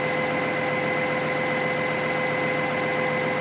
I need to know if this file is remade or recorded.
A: recorded